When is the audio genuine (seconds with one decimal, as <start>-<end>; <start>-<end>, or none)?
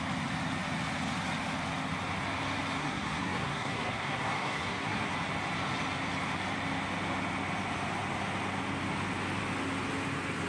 0.0-2.8; 5.1-10.5